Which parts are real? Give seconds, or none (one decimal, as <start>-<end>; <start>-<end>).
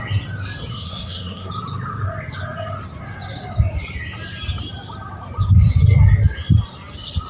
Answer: 0.0-0.7; 1.5-7.3